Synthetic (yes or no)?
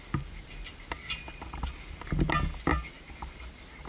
no